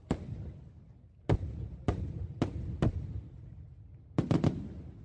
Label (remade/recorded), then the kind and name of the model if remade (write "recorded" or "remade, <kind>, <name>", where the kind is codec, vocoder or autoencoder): recorded